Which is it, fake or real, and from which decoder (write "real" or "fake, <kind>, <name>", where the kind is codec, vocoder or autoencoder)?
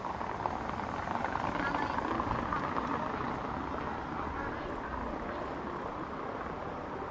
real